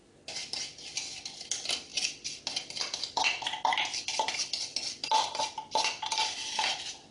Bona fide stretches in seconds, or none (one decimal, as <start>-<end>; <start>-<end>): 0.0-7.1